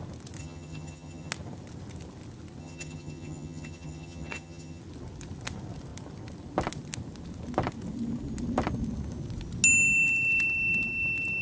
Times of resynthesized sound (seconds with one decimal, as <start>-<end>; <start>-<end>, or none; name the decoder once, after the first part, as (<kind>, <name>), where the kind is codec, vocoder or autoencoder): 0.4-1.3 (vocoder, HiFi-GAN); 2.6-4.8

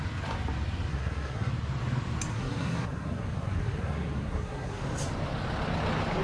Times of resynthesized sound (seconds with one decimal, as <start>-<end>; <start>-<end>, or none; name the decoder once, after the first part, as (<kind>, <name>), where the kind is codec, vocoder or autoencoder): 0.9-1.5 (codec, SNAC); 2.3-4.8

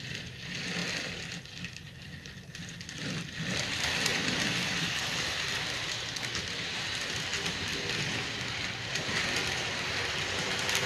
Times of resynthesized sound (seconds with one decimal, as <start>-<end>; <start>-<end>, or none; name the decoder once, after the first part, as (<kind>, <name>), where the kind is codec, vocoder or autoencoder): 4.1-5.5 (vocoder, BigVGAN v2)